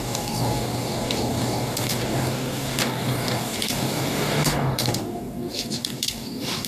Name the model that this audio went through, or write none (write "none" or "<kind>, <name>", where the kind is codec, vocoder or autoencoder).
codec, DAC